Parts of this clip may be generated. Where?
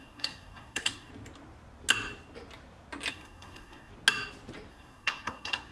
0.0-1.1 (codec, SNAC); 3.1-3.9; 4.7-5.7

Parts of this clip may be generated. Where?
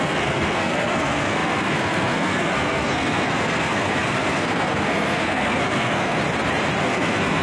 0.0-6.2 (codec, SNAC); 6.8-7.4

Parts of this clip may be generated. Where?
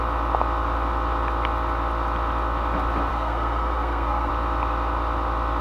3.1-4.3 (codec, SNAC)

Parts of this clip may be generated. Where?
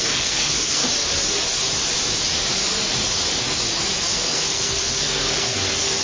0.0-0.8 (codec, SNAC); 4.1-6.0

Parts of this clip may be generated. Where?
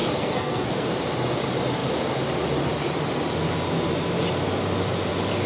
0.0-0.9 (codec, SNAC)